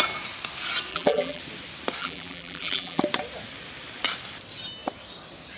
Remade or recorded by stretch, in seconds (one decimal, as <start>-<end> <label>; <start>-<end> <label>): 0.0-0.9 recorded; 0.9-1.4 remade; 1.4-2.0 recorded; 2.0-3.0 remade; 3.0-5.6 recorded